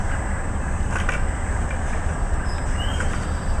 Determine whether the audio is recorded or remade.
recorded